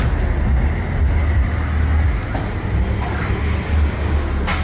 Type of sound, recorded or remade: recorded